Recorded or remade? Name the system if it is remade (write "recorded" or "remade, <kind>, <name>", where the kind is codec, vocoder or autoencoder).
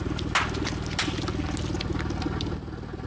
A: recorded